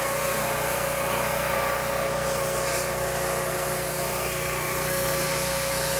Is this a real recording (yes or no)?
no